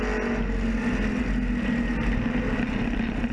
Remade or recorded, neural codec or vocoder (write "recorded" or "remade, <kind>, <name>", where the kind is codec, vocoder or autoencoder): recorded